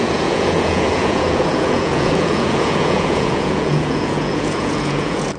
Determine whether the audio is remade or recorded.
remade